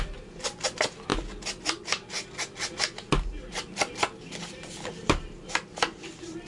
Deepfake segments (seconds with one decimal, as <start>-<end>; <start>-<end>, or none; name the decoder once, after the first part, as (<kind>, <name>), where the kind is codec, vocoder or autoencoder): none